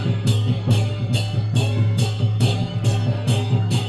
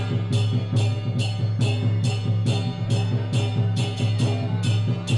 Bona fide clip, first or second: second